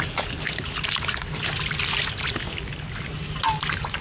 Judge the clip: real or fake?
real